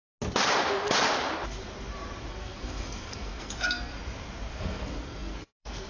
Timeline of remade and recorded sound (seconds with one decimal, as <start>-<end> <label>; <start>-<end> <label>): 0.0-2.3 recorded; 2.3-3.9 remade; 3.9-4.5 recorded; 4.5-5.9 remade